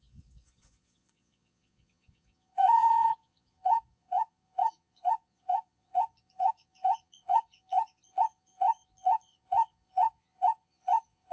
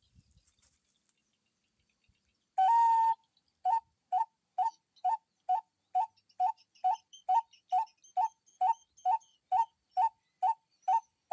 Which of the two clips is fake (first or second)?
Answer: first